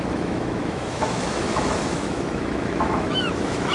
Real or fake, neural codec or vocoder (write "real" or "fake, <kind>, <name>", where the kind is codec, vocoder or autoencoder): fake, autoencoder, DAC-VAE